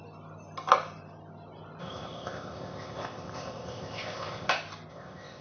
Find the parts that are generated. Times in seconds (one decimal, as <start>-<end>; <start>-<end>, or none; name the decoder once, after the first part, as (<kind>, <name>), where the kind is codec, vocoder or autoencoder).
1.8-4.5 (codec, ZipCodec); 4.9-5.4